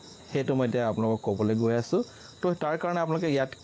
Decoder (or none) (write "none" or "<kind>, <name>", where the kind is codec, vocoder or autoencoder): vocoder, Vocos